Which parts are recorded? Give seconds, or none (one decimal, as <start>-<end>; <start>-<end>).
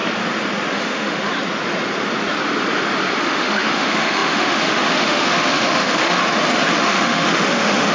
0.0-0.7; 1.3-3.2; 6.2-6.8